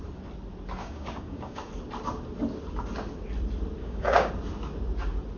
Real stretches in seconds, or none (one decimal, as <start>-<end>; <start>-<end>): 0.0-0.8; 1.7-3.8; 4.3-5.4